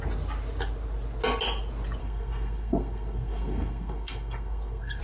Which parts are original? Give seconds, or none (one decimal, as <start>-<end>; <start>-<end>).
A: 0.0-2.0